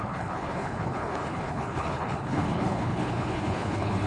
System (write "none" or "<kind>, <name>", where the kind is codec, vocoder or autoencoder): codec, HILCodec